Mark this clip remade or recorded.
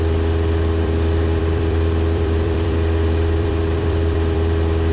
remade